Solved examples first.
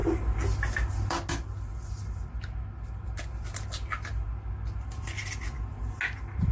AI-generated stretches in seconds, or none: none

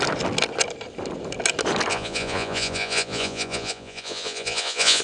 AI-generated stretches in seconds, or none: 1.9-5.0 (vocoder, Vocos)

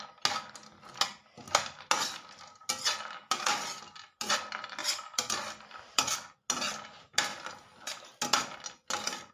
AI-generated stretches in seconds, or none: 4.8-6.3 (vocoder, BigVGAN v2)

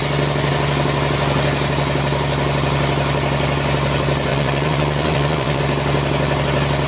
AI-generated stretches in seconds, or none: 4.3-5.6 (vocoder, Vocos)

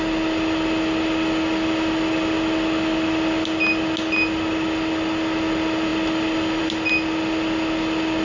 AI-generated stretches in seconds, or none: none

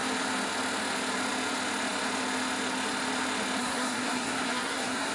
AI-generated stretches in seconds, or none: 3.6-5.1 (codec, SNAC)

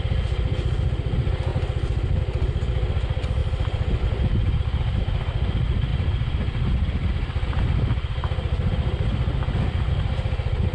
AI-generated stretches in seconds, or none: none